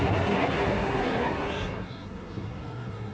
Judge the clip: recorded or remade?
remade